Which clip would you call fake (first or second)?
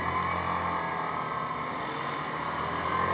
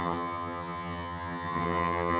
second